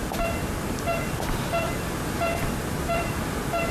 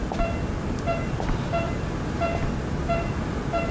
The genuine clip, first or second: second